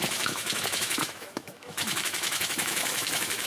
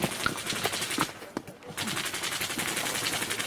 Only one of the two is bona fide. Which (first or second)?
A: second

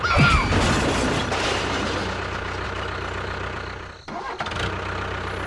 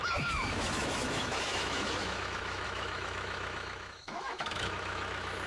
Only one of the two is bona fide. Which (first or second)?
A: first